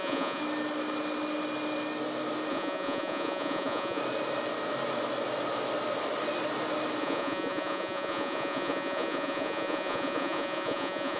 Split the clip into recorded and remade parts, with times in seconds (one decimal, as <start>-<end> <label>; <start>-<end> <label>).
0.0-0.4 remade; 0.4-2.5 recorded; 2.5-4.0 remade; 4.0-7.0 recorded; 7.0-11.2 remade